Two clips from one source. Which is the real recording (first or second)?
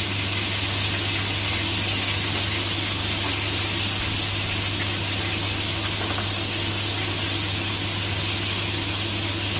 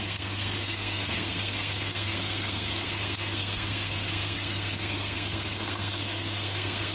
first